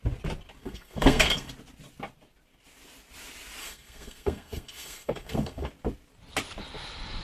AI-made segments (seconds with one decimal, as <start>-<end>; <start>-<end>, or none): 0.6-1.5; 3.6-5.7